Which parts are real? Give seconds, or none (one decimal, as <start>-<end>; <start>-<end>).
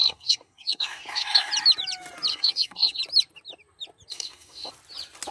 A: 1.5-2.3; 3.0-4.1; 4.7-5.3